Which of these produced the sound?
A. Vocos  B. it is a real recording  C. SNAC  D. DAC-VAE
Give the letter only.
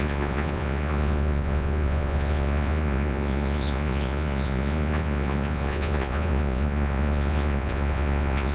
A